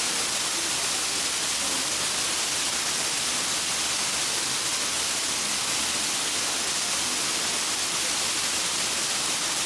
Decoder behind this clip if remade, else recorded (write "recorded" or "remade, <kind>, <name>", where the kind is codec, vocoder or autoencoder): recorded